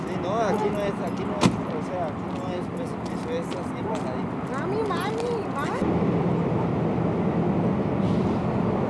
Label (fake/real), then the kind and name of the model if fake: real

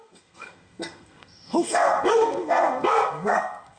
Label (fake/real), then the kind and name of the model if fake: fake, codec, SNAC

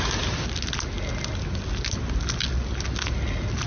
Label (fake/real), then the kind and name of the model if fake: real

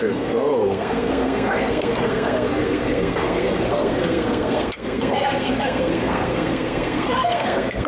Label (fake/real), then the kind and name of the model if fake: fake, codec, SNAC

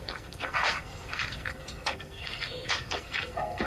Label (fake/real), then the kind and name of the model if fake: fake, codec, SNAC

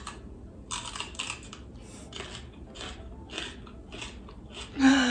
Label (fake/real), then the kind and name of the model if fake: real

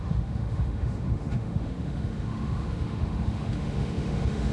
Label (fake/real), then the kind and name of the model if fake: fake, autoencoder, DAC-VAE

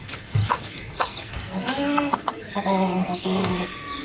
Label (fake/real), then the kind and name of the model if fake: fake, codec, SNAC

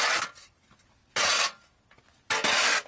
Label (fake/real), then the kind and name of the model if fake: real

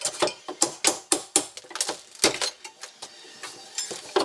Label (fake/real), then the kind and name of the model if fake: real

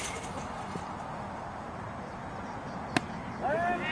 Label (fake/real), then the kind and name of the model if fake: real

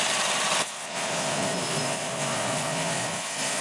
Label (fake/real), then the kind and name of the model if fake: real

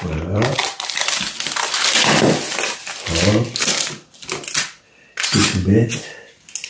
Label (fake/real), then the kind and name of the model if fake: real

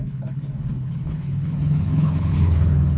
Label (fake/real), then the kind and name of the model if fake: fake, codec, HILCodec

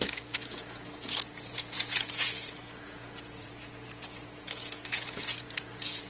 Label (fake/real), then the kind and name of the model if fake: fake, vocoder, Vocos